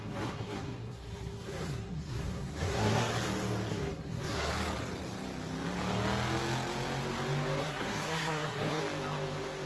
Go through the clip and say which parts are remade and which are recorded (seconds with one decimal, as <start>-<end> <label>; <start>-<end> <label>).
0.0-3.1 remade; 3.1-3.7 recorded; 3.7-4.5 remade; 4.5-7.6 recorded; 7.6-8.8 remade; 8.8-9.7 recorded